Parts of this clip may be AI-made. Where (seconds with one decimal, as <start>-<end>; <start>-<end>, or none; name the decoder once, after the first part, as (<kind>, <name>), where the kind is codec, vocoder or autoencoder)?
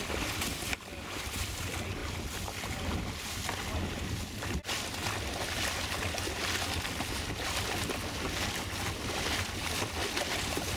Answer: none